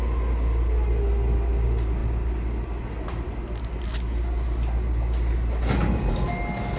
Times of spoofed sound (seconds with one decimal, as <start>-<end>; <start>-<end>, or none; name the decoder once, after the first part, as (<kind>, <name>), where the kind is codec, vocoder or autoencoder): none